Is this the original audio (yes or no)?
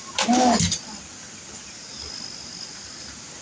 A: yes